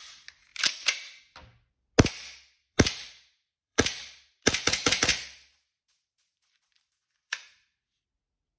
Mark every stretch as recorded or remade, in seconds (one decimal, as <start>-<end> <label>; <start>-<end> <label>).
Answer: 0.0-0.5 recorded; 0.5-1.0 remade; 1.0-2.6 recorded; 2.6-4.3 remade; 4.3-5.1 recorded; 5.1-8.1 remade; 8.1-8.6 recorded